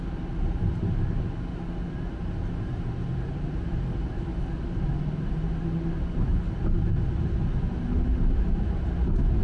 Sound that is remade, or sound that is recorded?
recorded